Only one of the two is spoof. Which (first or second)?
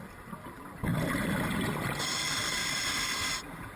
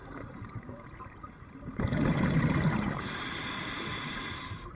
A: second